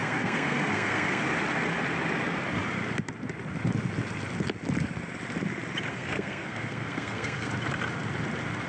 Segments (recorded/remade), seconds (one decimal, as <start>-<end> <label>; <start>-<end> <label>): 0.0-1.2 remade; 1.2-5.9 recorded; 5.9-7.5 remade; 7.5-8.7 recorded

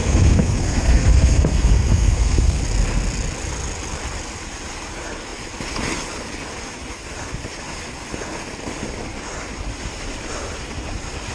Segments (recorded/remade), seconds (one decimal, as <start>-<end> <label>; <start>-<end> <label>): 0.0-2.6 remade; 2.6-11.3 recorded

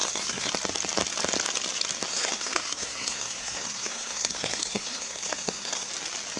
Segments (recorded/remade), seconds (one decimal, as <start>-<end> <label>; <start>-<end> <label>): 0.0-0.5 remade; 0.5-2.1 recorded; 2.1-5.9 remade; 5.9-6.4 recorded

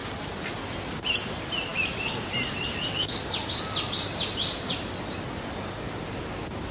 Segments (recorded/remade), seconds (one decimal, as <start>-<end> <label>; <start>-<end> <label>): 0.0-6.7 recorded

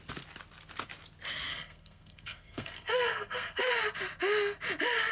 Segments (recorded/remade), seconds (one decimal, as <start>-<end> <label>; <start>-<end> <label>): 0.0-1.5 recorded; 1.5-3.7 remade; 3.7-5.1 recorded

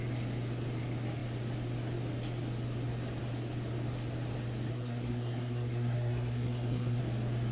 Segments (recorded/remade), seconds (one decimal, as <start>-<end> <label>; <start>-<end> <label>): 0.0-4.7 recorded; 4.7-7.0 remade; 7.0-7.5 recorded